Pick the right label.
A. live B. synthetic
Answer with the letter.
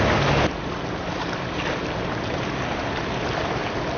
A